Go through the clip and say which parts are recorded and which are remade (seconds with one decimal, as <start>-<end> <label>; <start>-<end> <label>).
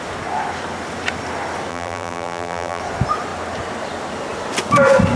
0.0-1.7 recorded; 1.7-2.8 remade; 2.8-5.2 recorded